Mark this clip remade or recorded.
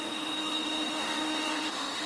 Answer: remade